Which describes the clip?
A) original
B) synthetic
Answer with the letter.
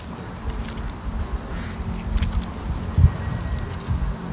A